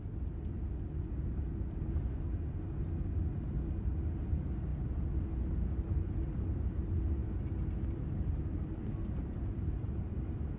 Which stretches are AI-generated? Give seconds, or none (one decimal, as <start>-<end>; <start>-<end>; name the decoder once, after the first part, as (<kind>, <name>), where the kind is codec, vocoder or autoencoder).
none